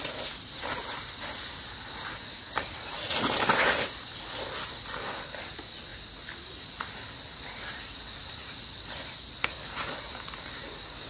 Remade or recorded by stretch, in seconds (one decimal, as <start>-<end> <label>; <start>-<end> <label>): 0.0-11.1 recorded